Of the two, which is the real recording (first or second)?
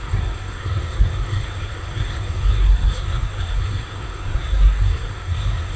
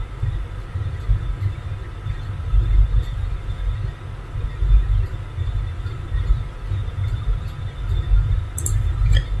second